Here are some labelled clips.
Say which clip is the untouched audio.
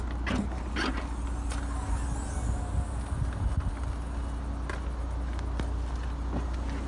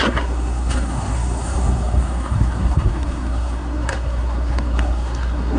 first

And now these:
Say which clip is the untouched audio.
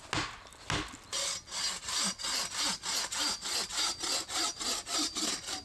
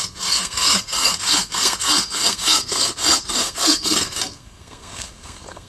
first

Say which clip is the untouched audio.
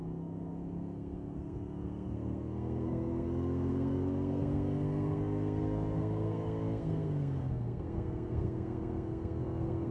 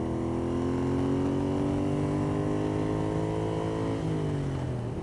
second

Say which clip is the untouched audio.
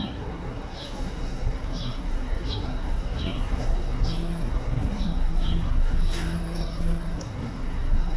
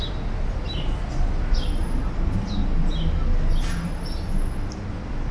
second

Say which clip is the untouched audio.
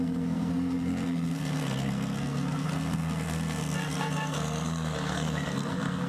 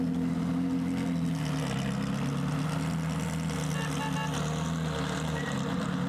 second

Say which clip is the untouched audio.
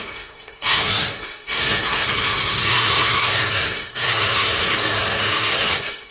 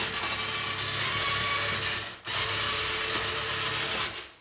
second